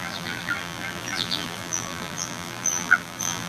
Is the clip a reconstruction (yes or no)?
yes